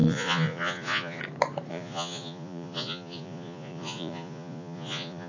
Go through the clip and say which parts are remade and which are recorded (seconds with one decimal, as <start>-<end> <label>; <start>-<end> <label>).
0.0-1.2 remade; 1.2-1.7 recorded; 1.7-5.3 remade